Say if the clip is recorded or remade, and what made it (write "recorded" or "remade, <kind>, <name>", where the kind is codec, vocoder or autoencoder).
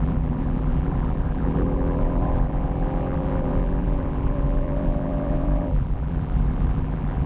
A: remade, vocoder, BigVGAN v2